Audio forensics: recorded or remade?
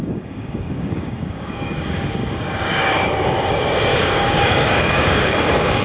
remade